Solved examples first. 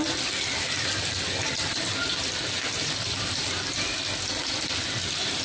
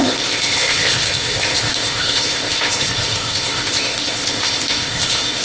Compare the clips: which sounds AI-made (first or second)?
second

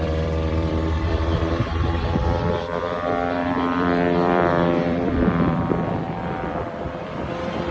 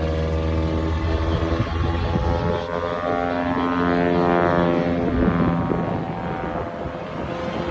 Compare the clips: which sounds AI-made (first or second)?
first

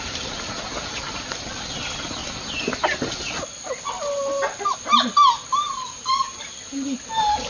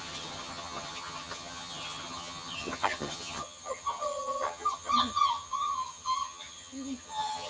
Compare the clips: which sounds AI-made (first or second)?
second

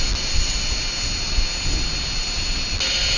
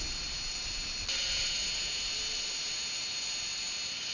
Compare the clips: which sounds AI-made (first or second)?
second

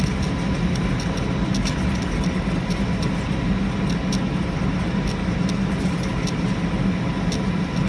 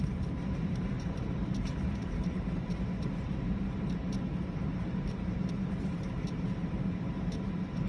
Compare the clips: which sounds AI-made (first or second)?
second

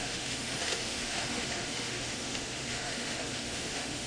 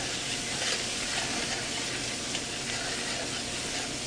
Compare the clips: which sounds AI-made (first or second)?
first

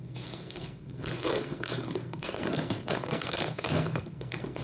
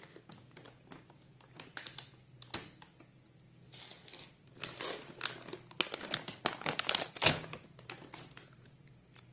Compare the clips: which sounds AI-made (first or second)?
first